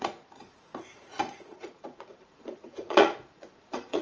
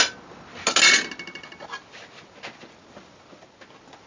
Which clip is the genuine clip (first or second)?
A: second